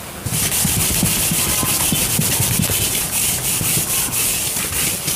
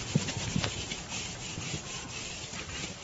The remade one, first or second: second